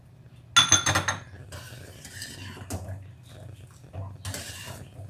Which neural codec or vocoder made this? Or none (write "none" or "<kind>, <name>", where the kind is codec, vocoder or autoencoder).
none